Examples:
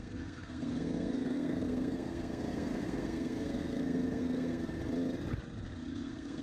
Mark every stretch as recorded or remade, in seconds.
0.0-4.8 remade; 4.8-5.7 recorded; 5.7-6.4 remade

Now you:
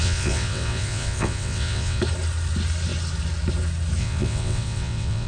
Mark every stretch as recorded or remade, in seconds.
0.0-2.0 remade; 2.0-4.0 recorded; 4.0-5.3 remade

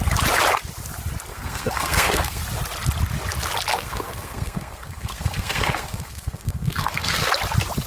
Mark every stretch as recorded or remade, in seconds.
0.0-1.3 recorded; 1.3-2.4 remade; 2.4-3.7 recorded; 3.7-7.3 remade; 7.3-7.9 recorded

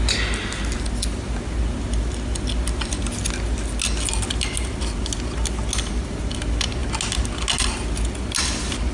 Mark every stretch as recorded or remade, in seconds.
0.0-8.9 recorded

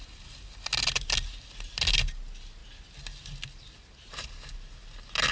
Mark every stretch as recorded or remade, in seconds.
0.0-5.3 recorded